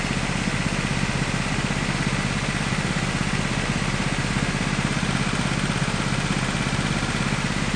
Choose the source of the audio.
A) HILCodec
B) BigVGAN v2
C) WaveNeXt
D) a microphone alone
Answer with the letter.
D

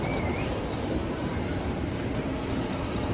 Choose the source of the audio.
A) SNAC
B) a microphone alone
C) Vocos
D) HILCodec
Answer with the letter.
B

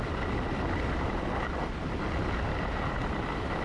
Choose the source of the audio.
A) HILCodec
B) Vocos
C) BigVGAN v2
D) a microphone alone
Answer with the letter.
D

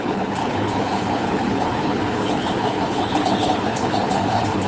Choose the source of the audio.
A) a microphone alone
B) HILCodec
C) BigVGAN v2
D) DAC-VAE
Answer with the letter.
B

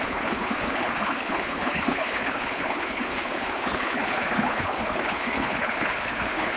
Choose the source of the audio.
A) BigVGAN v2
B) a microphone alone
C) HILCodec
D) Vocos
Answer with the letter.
C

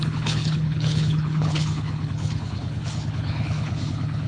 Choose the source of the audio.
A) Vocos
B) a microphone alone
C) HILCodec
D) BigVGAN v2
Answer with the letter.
C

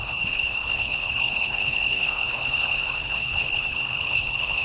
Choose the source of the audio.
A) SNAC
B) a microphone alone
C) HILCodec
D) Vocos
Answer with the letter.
C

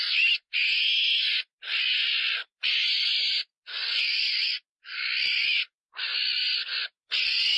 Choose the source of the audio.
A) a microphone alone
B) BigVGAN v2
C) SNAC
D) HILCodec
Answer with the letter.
A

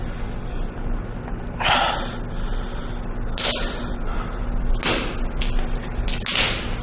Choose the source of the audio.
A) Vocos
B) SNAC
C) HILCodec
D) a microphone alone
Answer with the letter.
D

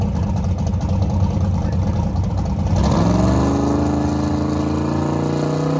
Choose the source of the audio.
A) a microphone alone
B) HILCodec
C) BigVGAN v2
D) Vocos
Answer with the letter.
A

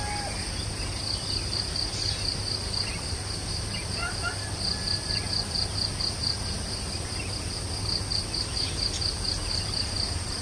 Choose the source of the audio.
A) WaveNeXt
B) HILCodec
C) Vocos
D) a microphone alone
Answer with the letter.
D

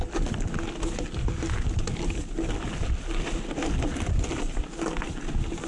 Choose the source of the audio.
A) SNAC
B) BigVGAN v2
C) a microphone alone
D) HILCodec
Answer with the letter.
C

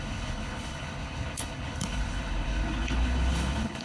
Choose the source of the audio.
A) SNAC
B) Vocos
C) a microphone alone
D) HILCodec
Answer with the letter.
D